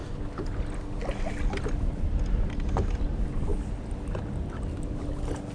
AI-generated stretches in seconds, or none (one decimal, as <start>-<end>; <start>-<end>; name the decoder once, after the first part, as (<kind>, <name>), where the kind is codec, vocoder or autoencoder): none